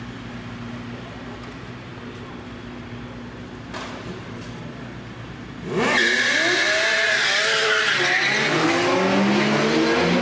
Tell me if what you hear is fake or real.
real